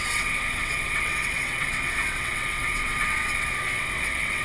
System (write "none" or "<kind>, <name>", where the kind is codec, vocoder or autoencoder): vocoder, WaveNeXt